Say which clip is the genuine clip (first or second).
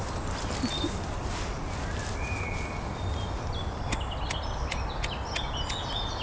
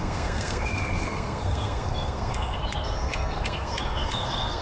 first